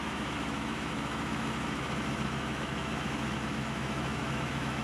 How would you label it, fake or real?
fake